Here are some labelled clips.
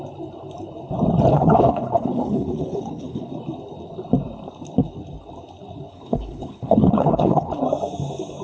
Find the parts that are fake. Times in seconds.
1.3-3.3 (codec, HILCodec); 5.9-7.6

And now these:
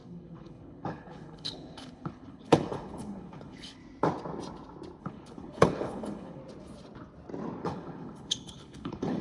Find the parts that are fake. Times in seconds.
0.0-3.8 (codec, HILCodec); 5.0-6.4; 7.6-9.2

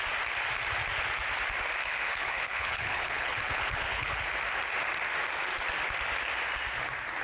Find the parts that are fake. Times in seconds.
1.8-4.2 (codec, HILCodec)

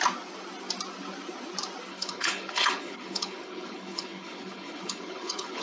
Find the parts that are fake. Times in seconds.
1.9-5.6 (codec, HILCodec)